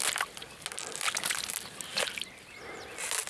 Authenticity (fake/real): real